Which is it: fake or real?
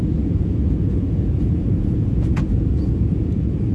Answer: fake